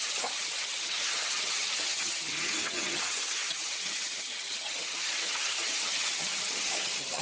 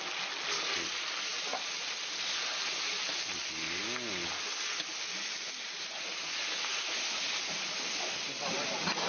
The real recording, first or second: second